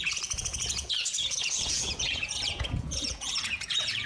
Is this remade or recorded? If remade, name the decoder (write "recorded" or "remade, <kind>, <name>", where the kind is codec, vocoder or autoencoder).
remade, vocoder, Vocos